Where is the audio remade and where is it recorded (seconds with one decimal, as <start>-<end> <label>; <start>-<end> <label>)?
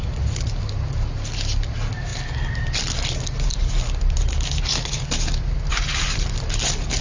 0.0-7.0 recorded